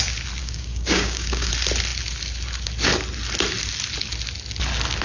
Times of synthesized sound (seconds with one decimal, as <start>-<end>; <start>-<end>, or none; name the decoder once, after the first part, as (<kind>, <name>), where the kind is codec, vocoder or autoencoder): 0.4-1.5 (codec, DAC)